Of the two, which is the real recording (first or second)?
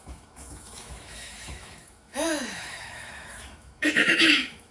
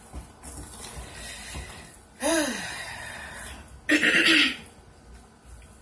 second